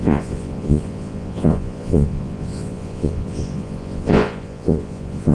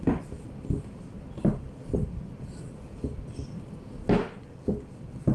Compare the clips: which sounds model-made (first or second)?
first